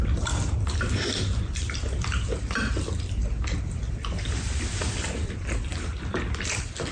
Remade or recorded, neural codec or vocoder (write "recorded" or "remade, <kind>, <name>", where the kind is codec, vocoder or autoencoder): remade, vocoder, BigVGAN v2